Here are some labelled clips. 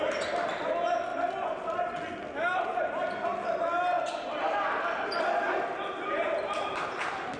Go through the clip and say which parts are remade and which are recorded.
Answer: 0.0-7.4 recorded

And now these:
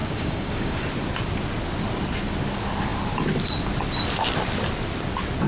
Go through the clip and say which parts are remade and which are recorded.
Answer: 0.0-0.9 remade; 0.9-5.5 recorded

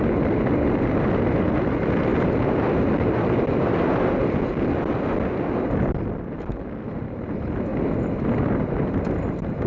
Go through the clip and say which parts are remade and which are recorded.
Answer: 0.0-9.7 recorded

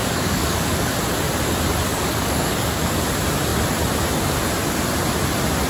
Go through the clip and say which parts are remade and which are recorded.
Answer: 0.0-0.9 remade; 0.9-1.9 recorded; 1.9-3.0 remade; 3.0-5.7 recorded